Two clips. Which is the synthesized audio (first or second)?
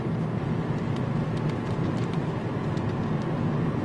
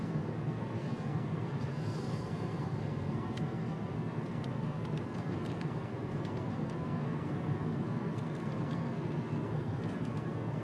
second